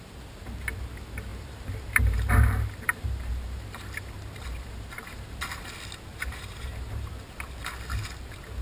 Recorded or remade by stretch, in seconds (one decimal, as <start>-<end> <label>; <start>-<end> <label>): 0.0-1.3 recorded; 1.3-5.6 remade; 5.6-6.1 recorded; 6.1-7.1 remade; 7.1-8.6 recorded